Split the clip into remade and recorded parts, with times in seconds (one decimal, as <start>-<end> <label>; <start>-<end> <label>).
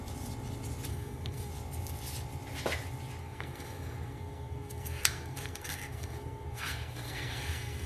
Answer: 0.0-0.9 recorded; 0.9-1.5 remade; 1.5-3.2 recorded; 3.2-7.9 remade